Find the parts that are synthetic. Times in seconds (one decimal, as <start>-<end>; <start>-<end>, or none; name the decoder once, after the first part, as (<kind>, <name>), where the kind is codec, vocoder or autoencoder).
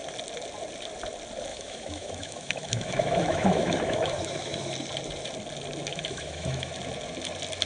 1.5-4.7 (autoencoder, DAC-VAE); 5.9-6.7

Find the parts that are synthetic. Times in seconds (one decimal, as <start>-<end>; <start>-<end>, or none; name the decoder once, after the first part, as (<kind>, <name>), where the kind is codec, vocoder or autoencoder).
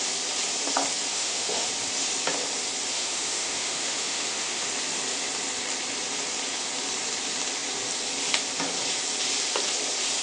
1.1-1.7 (autoencoder, DAC-VAE); 2.9-4.7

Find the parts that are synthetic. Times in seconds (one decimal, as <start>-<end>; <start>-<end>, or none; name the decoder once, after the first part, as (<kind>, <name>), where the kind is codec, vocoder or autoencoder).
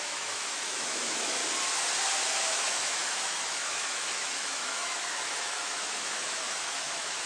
0.0-1.4 (autoencoder, DAC-VAE); 2.3-7.3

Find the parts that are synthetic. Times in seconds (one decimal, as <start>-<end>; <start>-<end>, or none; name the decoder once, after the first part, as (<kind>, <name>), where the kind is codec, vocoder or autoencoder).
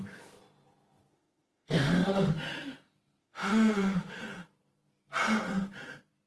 1.1-2.3 (autoencoder, DAC-VAE); 3.2-4.2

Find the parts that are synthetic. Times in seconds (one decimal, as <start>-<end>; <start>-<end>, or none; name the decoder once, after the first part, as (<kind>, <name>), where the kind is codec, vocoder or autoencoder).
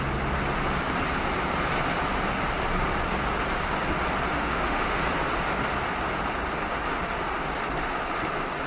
4.3-5.0 (autoencoder, DAC-VAE)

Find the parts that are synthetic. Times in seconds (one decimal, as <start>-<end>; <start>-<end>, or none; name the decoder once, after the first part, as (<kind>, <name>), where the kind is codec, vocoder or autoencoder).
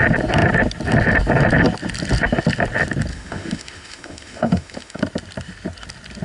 3.1-5.0 (autoencoder, DAC-VAE)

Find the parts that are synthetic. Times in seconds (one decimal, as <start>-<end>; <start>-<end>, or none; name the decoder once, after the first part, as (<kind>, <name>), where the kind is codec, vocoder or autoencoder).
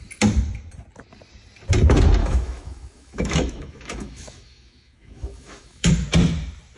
2.2-5.9 (autoencoder, DAC-VAE)